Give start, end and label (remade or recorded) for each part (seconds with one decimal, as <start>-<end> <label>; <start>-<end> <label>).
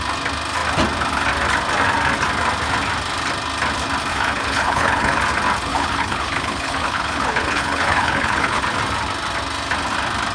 0.0-4.1 recorded; 4.1-5.2 remade; 5.2-5.7 recorded; 5.7-8.6 remade; 8.6-10.3 recorded